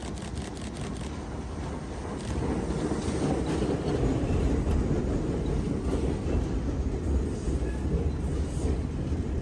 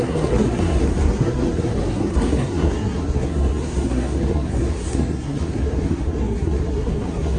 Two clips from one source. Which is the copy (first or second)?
second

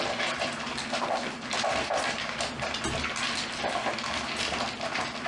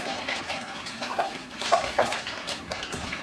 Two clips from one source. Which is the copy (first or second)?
second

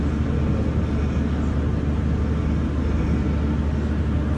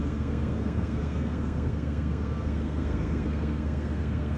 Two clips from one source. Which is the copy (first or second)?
second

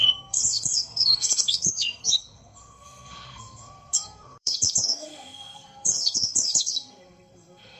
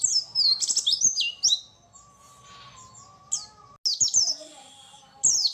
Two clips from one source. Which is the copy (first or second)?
first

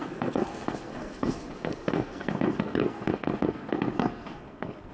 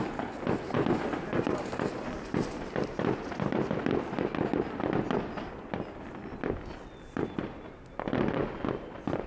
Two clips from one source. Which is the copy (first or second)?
first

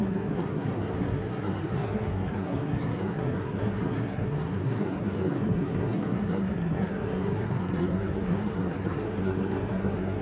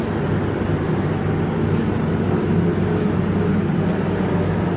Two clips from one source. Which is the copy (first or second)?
first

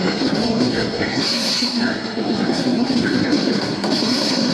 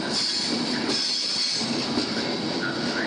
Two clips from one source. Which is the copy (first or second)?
first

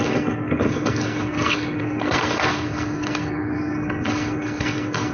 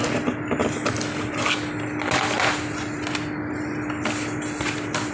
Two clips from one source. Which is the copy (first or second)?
first